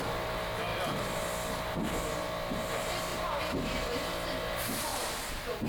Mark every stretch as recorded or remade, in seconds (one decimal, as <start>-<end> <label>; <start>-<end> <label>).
0.0-3.1 recorded; 3.1-4.1 remade; 4.1-4.9 recorded; 4.9-5.7 remade